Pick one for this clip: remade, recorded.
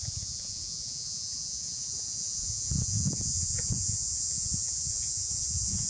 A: remade